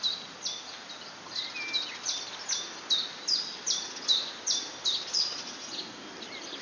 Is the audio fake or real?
real